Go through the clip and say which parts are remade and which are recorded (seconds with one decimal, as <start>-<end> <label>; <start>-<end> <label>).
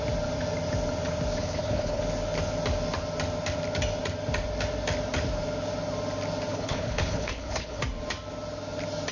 0.0-1.4 recorded; 1.4-2.0 remade; 2.0-6.5 recorded; 6.5-7.8 remade; 7.8-9.1 recorded